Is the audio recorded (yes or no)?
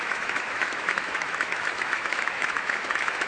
no